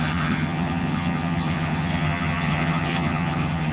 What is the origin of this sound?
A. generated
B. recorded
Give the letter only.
A